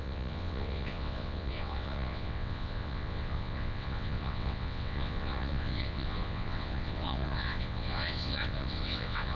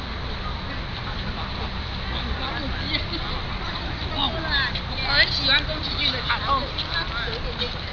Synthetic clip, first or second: first